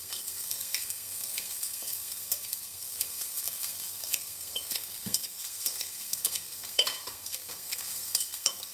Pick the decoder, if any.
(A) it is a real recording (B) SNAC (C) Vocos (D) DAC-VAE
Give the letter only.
B